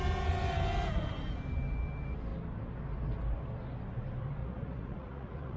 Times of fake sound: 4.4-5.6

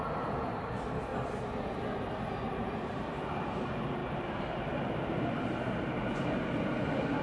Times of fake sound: 0.0-1.1; 2.5-7.2

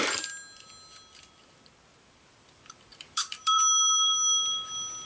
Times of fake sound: 2.9-3.6

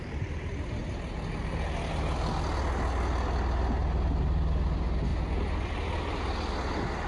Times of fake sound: none

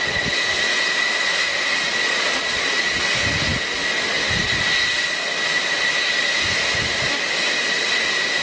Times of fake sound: 2.0-3.0

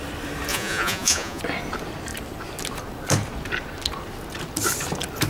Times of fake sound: 0.5-1.4

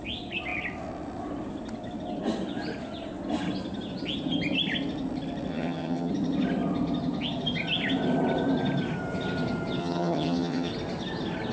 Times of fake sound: 5.5-6.1; 9.8-10.7